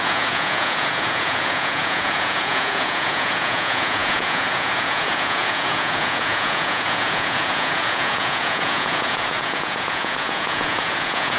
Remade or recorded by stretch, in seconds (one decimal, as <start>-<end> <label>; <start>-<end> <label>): 0.0-11.4 remade